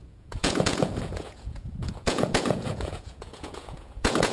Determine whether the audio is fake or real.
fake